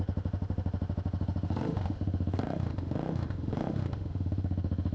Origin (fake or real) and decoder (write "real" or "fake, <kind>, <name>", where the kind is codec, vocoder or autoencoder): fake, autoencoder, DAC-VAE